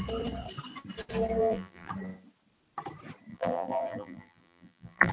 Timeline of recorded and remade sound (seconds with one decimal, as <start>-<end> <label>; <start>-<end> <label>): 0.0-1.4 recorded; 1.4-1.9 remade; 1.9-3.3 recorded; 3.3-5.1 remade